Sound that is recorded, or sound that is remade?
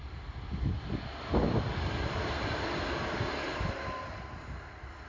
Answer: recorded